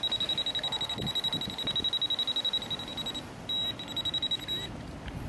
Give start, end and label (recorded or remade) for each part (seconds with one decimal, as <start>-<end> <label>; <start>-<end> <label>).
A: 0.0-5.3 recorded